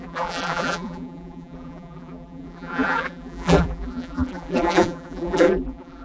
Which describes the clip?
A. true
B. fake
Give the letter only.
B